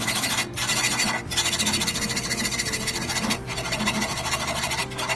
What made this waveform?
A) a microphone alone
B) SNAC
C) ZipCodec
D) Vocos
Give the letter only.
A